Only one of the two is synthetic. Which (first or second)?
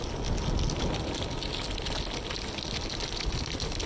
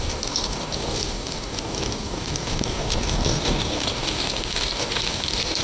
second